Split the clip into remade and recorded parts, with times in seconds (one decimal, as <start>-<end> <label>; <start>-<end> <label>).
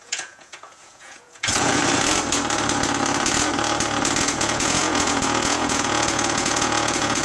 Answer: 0.0-1.8 remade; 1.8-4.2 recorded; 4.2-7.2 remade